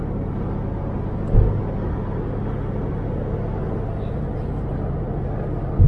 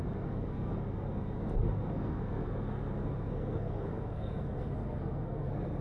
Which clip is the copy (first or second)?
second